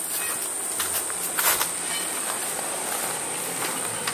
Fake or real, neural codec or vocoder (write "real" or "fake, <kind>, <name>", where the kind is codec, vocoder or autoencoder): real